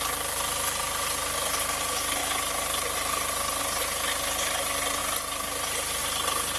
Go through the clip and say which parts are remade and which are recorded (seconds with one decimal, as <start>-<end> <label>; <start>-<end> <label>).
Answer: 0.0-6.6 recorded